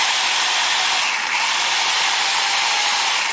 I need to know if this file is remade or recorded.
recorded